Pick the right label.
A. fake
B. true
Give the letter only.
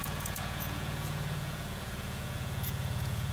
A